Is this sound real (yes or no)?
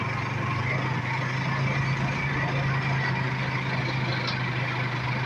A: yes